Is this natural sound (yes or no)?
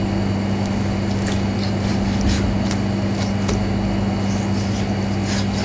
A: yes